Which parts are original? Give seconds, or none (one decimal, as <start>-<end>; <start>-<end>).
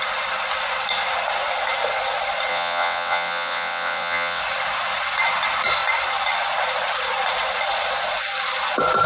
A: 0.0-2.5; 4.4-9.1